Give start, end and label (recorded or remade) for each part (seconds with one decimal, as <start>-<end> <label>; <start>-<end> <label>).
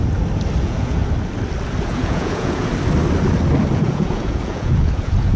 0.0-0.6 recorded; 0.6-1.0 remade; 1.0-1.8 recorded; 1.8-2.7 remade; 2.7-3.7 recorded; 3.7-5.4 remade